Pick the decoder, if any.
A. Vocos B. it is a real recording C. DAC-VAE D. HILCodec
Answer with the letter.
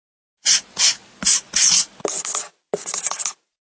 B